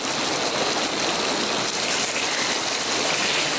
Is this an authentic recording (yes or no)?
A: yes